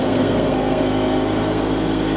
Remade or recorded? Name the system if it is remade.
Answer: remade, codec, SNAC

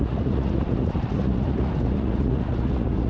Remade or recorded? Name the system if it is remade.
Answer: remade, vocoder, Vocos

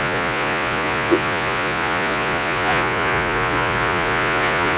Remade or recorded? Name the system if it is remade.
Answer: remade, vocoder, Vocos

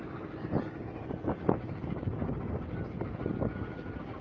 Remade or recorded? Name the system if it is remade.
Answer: recorded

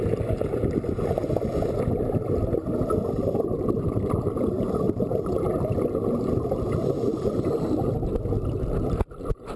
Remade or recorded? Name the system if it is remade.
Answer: remade, vocoder, BigVGAN v2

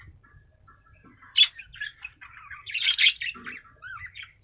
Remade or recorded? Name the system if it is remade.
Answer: remade, vocoder, BigVGAN v2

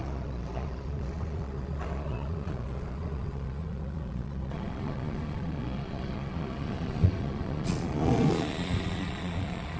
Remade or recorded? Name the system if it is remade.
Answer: remade, vocoder, Vocos